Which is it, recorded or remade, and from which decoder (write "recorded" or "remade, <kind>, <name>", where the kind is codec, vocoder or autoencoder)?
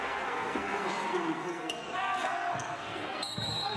remade, codec, SNAC